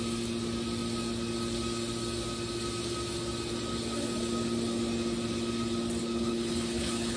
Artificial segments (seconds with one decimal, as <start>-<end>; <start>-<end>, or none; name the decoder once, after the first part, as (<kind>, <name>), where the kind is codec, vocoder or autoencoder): 6.0-7.2 (codec, HILCodec)